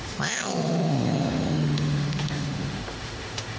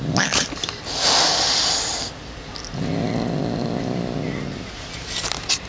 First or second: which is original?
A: second